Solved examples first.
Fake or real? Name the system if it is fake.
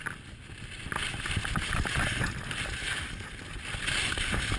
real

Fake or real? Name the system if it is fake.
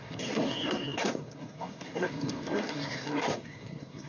fake, codec, SNAC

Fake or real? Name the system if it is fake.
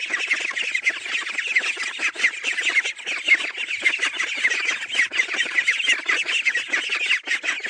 real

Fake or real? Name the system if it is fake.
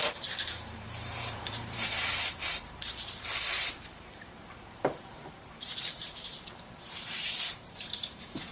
fake, vocoder, BigVGAN v2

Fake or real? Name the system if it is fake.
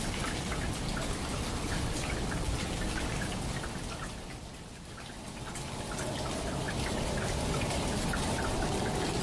real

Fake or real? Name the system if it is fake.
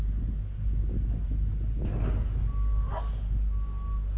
real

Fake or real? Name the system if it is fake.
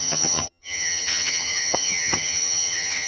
fake, vocoder, HiFi-GAN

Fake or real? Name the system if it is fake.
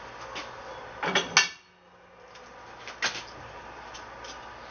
real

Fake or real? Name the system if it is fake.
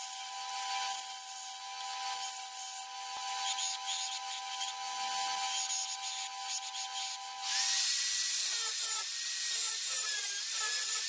real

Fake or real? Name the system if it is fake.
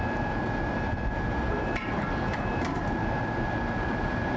real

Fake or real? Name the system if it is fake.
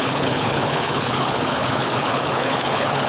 fake, codec, HILCodec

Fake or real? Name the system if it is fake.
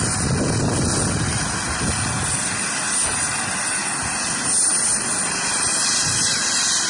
real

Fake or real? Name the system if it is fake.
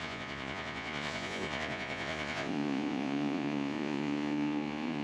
fake, vocoder, Vocos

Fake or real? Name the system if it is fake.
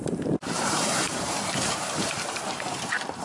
fake, vocoder, BigVGAN v2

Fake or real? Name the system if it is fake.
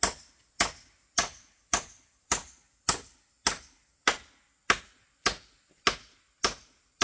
real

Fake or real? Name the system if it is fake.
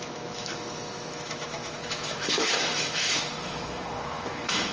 fake, autoencoder, DAC-VAE